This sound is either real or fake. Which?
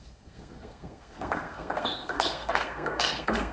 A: fake